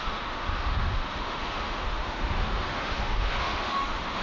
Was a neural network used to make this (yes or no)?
yes